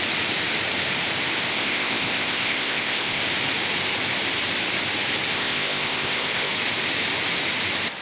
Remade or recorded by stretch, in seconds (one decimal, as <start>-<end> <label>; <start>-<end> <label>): 0.0-1.5 recorded; 1.5-3.2 remade; 3.2-5.3 recorded; 5.3-6.5 remade; 6.5-8.0 recorded